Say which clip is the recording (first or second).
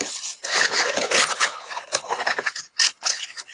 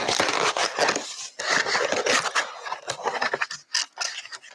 second